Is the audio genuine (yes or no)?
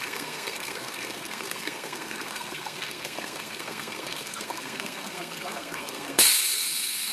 no